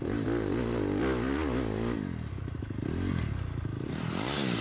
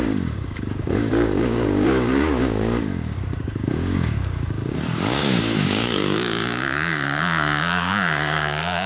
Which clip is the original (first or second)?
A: first